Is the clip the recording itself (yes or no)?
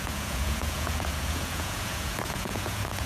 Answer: no